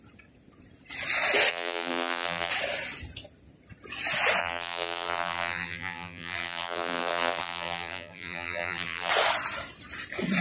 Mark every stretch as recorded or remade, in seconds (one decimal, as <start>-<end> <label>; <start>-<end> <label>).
0.0-1.5 recorded; 1.5-2.5 remade; 2.5-4.4 recorded; 4.4-9.1 remade; 9.1-10.4 recorded